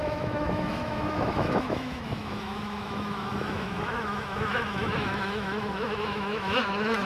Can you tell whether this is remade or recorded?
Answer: remade